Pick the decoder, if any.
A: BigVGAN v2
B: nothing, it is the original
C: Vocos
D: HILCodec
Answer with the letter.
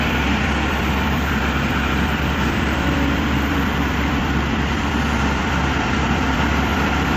A